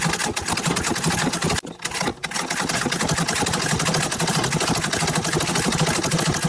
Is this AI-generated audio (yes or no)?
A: no